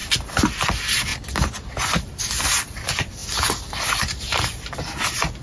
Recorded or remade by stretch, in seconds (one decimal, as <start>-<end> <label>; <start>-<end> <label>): 0.0-5.4 recorded